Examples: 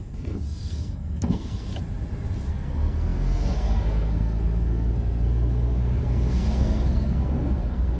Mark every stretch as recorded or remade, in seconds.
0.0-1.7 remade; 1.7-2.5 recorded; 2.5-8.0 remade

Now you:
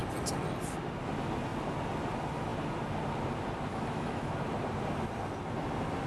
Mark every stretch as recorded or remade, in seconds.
0.0-3.7 recorded; 3.7-4.3 remade; 4.3-6.1 recorded

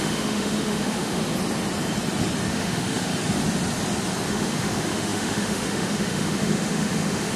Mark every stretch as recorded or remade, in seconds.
0.0-1.2 remade; 1.2-2.5 recorded; 2.5-3.1 remade; 3.1-4.3 recorded; 4.3-7.4 remade

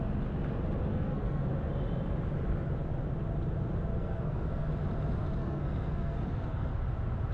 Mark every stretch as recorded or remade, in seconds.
0.0-0.9 recorded; 0.9-1.5 remade; 1.5-3.9 recorded; 3.9-4.7 remade; 4.7-5.4 recorded; 5.4-6.8 remade; 6.8-7.3 recorded

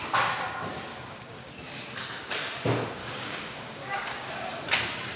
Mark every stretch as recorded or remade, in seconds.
0.0-0.9 recorded; 0.9-1.5 remade; 1.5-3.0 recorded; 3.0-4.3 remade; 4.3-5.2 recorded

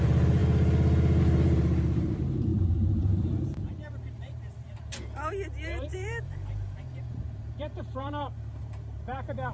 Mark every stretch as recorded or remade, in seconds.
0.0-0.4 remade; 0.4-1.2 recorded; 1.2-9.5 remade

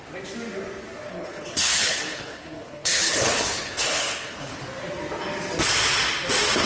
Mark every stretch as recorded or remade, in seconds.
0.0-1.1 recorded; 1.1-4.6 remade; 4.6-6.7 recorded

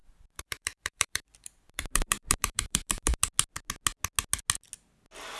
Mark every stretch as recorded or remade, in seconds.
0.0-3.2 remade; 3.2-5.4 recorded